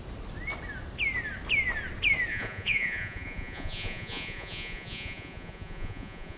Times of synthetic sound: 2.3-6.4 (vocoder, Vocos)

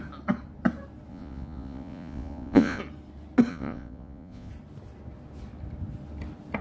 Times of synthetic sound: 1.1-2.8 (vocoder, Vocos); 3.5-4.5

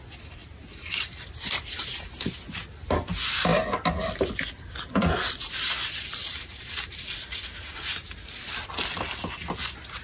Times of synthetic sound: 0.4-2.3 (vocoder, BigVGAN v2); 6.2-7.8

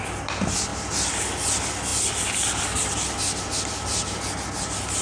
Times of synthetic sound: none

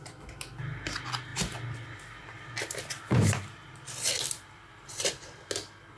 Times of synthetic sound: 1.3-4.9 (vocoder, BigVGAN v2)

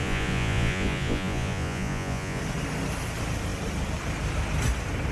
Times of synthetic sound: 0.0-2.4 (vocoder, Vocos)